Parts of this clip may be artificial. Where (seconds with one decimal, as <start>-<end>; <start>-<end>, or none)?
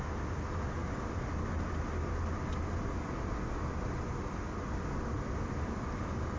none